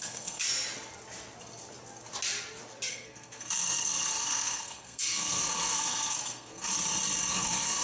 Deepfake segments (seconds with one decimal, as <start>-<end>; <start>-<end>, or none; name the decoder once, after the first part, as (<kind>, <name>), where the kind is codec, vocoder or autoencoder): 0.0-0.4 (codec, SNAC); 2.9-6.7; 7.3-7.8